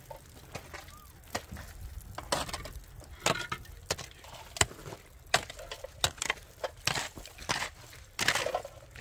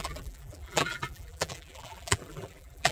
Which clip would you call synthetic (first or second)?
second